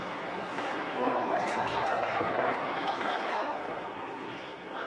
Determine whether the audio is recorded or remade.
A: remade